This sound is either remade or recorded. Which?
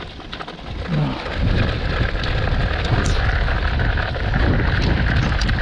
recorded